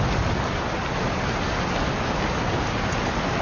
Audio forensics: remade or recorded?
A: recorded